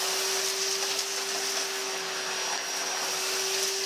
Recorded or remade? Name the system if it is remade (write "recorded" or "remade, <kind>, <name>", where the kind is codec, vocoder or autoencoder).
recorded